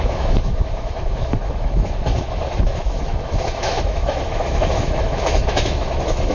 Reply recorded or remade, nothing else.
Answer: remade